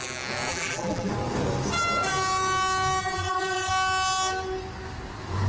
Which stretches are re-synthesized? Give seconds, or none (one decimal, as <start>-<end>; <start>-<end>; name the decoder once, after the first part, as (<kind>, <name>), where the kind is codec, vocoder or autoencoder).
0.5-1.1 (vocoder, BigVGAN v2); 3.0-3.7